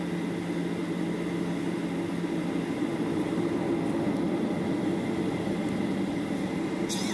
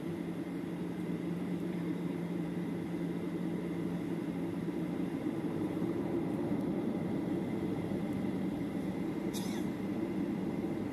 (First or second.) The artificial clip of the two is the second